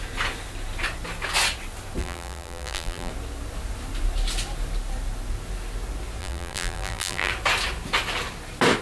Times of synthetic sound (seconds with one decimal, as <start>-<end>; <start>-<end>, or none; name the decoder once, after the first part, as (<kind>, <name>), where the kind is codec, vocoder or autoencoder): 2.0-3.1 (vocoder, BigVGAN v2); 6.2-7.3